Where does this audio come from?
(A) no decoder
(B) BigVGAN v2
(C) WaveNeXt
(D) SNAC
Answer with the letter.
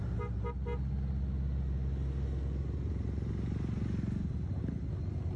A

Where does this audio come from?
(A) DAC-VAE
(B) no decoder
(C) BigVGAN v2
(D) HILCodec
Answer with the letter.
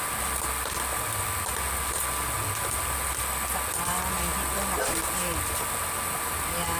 B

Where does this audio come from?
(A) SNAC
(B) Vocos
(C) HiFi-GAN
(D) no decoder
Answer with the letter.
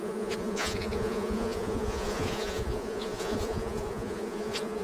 B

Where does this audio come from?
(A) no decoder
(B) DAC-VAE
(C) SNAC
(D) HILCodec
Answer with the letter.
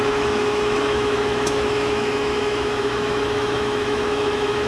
B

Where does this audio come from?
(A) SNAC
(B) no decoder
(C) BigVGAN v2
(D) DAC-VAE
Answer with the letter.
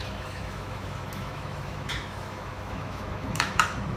D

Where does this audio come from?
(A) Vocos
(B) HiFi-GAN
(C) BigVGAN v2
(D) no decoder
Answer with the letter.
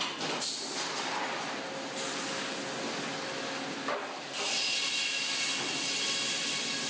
D